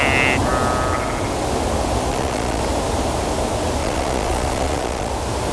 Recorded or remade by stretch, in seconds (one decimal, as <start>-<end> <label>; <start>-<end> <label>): 0.0-2.1 recorded; 2.1-2.6 remade; 2.6-3.8 recorded; 3.8-5.1 remade; 5.1-5.5 recorded